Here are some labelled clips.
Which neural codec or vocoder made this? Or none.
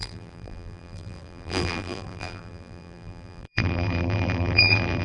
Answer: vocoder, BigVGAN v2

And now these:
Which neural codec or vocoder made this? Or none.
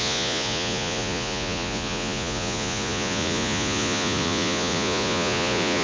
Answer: vocoder, Vocos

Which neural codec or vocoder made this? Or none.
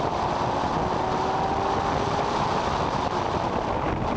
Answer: none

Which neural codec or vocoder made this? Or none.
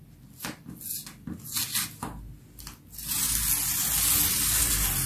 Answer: none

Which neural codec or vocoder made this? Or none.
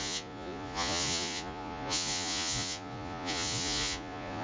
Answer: vocoder, Vocos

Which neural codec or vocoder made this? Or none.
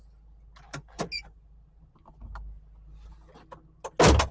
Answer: none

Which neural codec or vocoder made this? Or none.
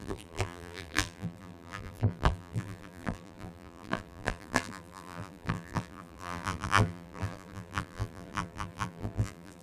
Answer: vocoder, BigVGAN v2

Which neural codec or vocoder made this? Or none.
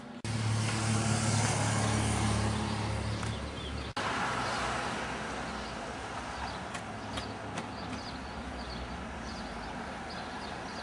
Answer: none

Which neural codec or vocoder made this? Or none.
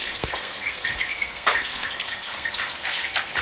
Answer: codec, SNAC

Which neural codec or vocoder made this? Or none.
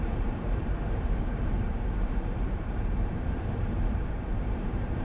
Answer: vocoder, BigVGAN v2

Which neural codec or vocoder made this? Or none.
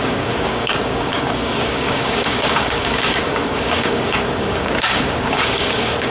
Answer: codec, DAC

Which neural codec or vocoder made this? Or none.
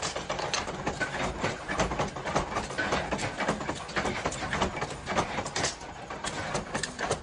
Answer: none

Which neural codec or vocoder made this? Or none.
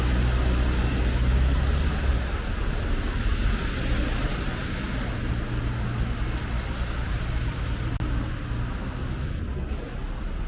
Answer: none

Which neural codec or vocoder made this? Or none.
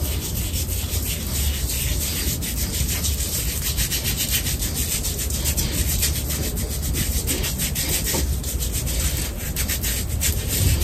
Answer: none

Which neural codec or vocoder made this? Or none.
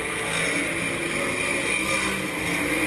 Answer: none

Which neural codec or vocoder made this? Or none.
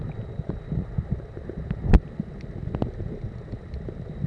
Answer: none